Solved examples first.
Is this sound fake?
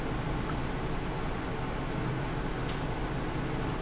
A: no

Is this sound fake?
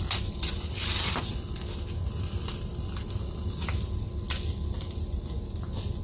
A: no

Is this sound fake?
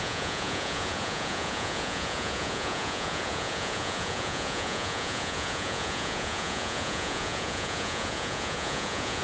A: yes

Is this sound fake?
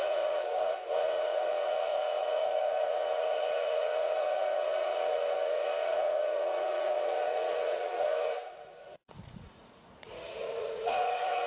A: yes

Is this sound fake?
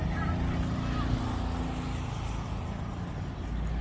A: no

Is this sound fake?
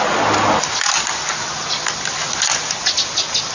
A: no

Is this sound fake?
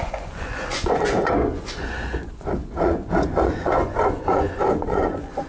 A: yes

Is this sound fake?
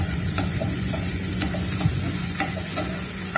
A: yes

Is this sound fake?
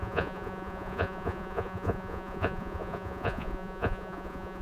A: yes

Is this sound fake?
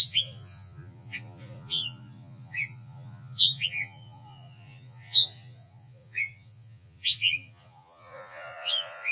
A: yes